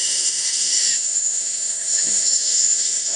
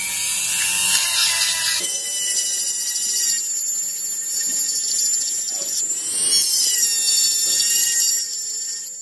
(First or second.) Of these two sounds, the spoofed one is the first